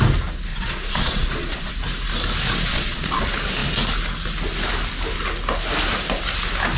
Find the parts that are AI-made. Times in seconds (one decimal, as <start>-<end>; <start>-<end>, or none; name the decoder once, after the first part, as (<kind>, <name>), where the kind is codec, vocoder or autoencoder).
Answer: 0.5-1.7 (vocoder, Vocos); 2.7-3.2